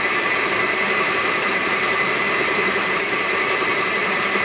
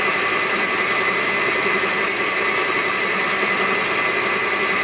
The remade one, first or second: first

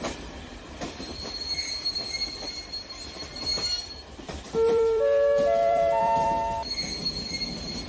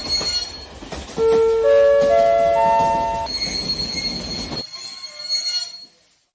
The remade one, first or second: first